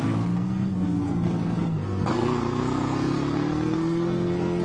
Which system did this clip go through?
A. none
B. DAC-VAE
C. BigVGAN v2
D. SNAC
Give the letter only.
D